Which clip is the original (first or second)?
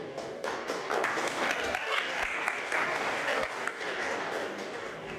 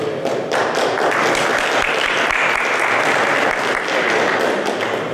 second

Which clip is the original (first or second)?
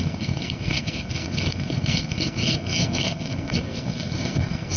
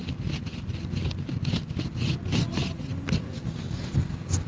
second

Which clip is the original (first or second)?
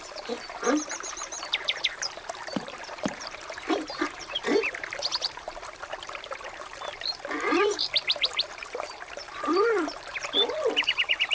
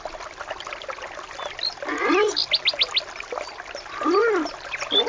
second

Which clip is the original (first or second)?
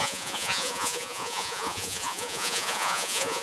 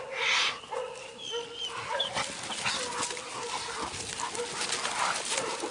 second